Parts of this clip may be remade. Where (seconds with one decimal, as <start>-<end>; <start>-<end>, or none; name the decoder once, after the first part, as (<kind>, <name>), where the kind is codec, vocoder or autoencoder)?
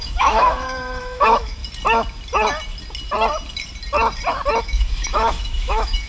0.0-1.6 (autoencoder, DAC-VAE); 4.6-6.1